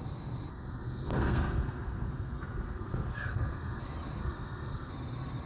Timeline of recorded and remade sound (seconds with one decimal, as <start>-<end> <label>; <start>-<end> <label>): 0.0-0.5 recorded; 0.5-3.8 remade; 3.8-4.2 recorded; 4.2-4.9 remade; 4.9-5.5 recorded